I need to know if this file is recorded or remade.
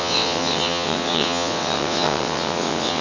remade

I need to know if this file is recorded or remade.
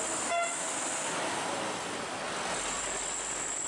recorded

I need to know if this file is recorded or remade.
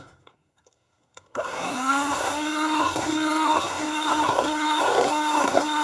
remade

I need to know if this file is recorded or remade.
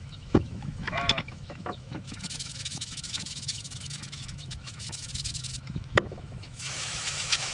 remade